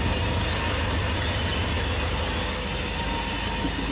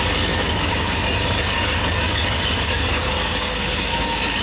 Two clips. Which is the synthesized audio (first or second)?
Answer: second